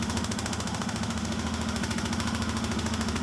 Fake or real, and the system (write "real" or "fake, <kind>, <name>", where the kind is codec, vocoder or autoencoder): fake, autoencoder, DAC-VAE